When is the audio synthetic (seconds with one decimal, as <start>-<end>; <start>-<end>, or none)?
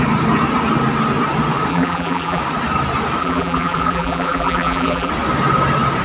1.7-2.4; 3.2-5.1